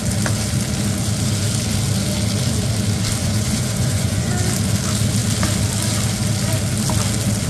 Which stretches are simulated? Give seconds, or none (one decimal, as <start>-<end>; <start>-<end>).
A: 3.2-4.3